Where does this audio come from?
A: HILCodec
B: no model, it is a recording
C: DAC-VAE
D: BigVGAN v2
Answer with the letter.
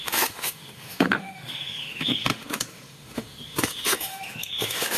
C